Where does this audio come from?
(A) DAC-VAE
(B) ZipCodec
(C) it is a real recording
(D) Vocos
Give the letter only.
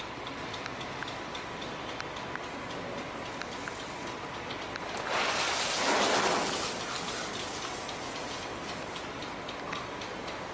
C